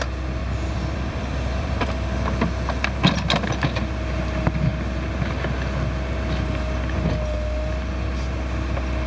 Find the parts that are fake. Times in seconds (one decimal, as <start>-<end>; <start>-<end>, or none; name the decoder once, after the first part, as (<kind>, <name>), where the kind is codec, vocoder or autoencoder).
0.4-1.9 (vocoder, BigVGAN v2)